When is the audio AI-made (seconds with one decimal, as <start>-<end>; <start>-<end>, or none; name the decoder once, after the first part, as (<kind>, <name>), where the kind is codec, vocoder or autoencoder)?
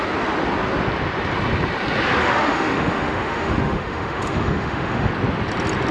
2.2-5.1 (autoencoder, DAC-VAE)